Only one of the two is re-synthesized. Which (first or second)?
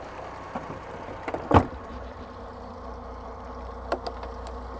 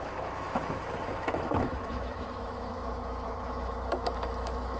second